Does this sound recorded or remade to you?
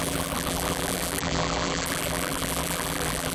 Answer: remade